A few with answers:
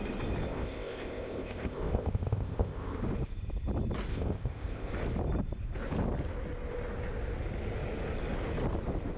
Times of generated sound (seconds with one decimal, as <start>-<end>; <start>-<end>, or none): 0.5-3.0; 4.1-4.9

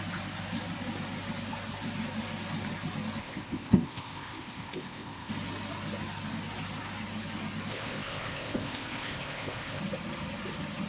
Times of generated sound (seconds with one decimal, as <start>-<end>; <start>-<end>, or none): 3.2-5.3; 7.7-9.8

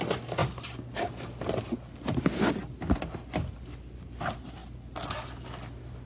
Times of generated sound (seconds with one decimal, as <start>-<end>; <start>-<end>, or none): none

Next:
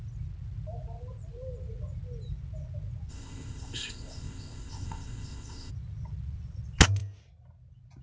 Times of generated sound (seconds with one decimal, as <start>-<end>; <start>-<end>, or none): 3.1-5.7

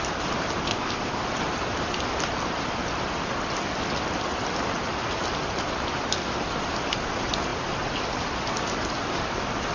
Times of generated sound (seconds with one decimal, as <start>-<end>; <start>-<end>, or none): 0.7-1.2